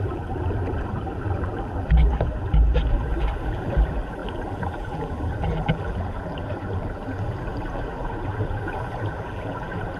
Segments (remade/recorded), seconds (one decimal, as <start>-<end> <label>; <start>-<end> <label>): 0.0-10.0 remade